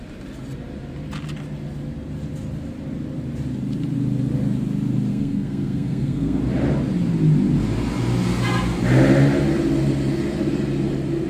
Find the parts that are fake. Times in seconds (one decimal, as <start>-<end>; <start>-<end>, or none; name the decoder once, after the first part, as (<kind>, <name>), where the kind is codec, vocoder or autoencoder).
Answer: 5.1-6.4 (codec, SNAC)